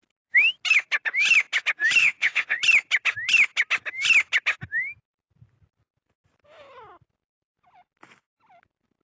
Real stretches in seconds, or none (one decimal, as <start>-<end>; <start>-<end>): 0.0-2.0; 2.6-9.0